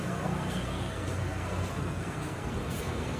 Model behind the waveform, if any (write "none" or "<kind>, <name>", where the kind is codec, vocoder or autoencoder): codec, SNAC